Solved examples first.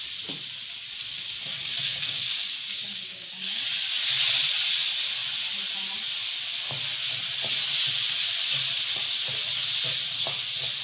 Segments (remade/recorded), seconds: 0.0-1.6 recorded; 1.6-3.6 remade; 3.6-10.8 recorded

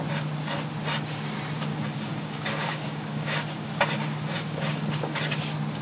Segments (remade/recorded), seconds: 0.0-1.7 recorded; 1.7-5.2 remade; 5.2-5.8 recorded

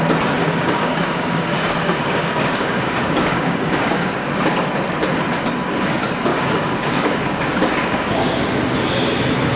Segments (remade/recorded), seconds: 0.0-0.4 recorded; 0.4-4.3 remade; 4.3-6.3 recorded; 6.3-8.4 remade; 8.4-9.6 recorded

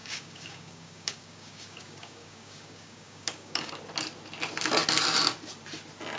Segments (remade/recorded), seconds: 0.0-3.7 remade; 3.7-6.2 recorded

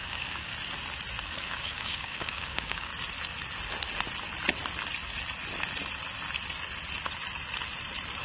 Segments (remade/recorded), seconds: 0.0-0.5 remade; 0.5-1.2 recorded; 1.2-2.9 remade; 2.9-8.2 recorded

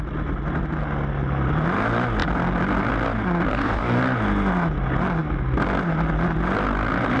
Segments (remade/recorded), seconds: 0.0-3.5 recorded; 3.5-4.0 remade; 4.0-7.2 recorded

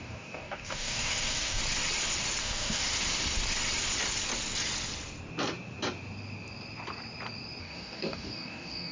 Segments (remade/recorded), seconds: 0.0-1.6 remade; 1.6-2.4 recorded; 2.4-2.9 remade; 2.9-7.6 recorded; 7.6-8.9 remade